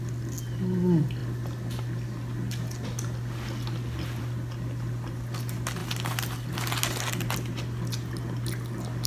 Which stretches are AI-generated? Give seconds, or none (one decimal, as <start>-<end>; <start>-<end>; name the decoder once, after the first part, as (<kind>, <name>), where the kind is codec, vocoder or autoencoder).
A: none